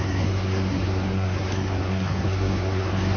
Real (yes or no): no